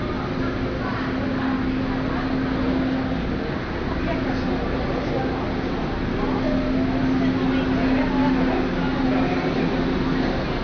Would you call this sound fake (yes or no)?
no